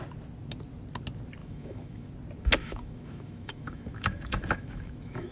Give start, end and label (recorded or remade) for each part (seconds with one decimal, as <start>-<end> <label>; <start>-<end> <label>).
0.0-1.4 recorded; 1.4-2.1 remade; 2.1-2.6 recorded; 2.6-5.3 remade